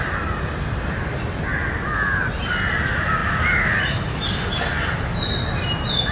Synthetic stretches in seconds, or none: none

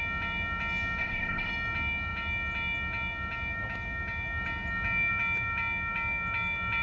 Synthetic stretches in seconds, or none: 1.0-1.5